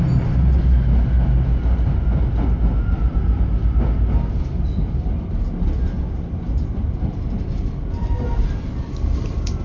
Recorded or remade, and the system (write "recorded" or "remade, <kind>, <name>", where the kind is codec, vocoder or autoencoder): recorded